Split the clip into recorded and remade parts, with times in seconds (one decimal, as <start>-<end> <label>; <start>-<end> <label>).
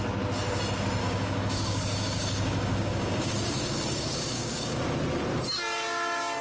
0.0-1.0 recorded; 1.0-4.8 remade; 4.8-6.4 recorded